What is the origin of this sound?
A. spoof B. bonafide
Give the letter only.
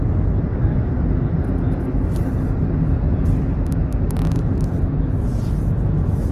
B